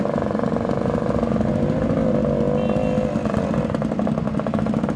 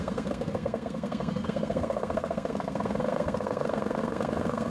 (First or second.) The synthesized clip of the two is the second